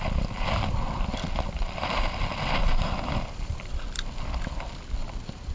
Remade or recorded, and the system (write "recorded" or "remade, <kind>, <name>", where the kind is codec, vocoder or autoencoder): remade, vocoder, BigVGAN v2